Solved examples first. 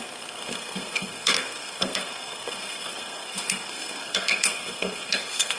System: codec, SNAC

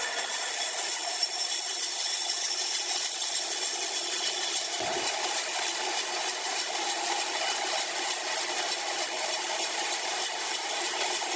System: none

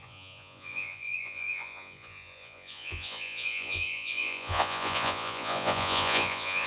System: vocoder, Vocos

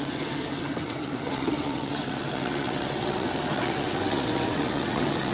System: vocoder, WaveNeXt